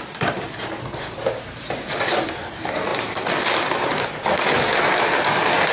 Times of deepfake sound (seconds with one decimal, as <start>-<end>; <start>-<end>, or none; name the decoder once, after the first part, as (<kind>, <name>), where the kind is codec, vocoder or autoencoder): none